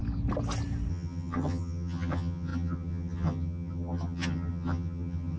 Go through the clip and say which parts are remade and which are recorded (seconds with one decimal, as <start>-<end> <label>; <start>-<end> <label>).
0.0-0.9 recorded; 0.9-5.4 remade